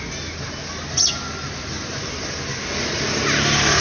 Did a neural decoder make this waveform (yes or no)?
no